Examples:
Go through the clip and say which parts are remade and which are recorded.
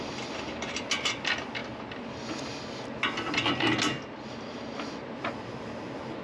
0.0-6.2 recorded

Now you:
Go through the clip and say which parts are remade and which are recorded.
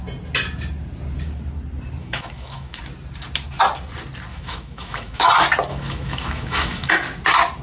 0.0-2.0 recorded; 2.0-2.8 remade; 2.8-4.3 recorded; 4.3-5.3 remade; 5.3-5.7 recorded; 5.7-6.9 remade; 6.9-7.6 recorded